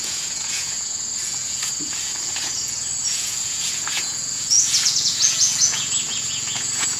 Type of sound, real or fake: fake